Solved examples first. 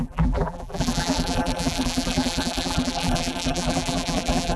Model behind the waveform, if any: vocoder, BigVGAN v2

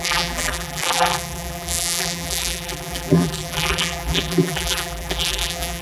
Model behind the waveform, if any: vocoder, BigVGAN v2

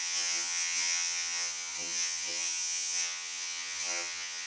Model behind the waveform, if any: vocoder, HiFi-GAN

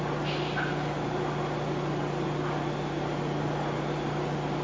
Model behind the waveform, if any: none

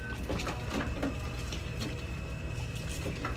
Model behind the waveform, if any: none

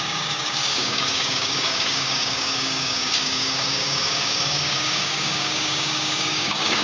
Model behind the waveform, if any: codec, DAC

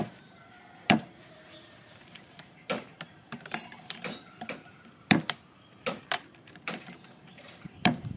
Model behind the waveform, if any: vocoder, BigVGAN v2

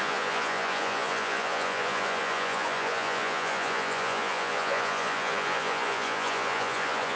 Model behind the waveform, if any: vocoder, Vocos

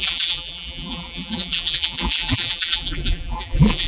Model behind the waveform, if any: vocoder, BigVGAN v2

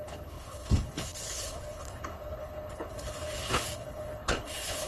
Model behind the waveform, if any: codec, HILCodec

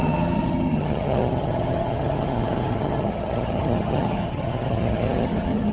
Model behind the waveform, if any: vocoder, HiFi-GAN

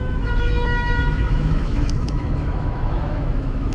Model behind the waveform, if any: autoencoder, DAC-VAE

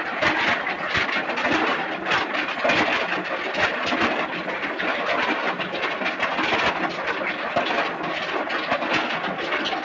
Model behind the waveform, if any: none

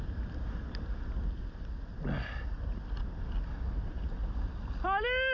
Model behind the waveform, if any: none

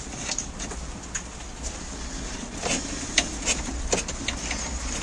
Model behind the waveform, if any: none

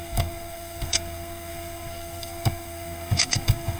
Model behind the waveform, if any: codec, SNAC